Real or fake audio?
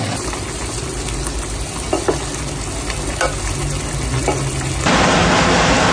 real